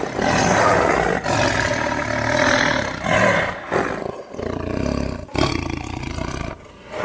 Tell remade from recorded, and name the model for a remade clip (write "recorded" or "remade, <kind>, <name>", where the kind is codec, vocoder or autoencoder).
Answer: recorded